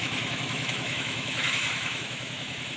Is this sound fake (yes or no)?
yes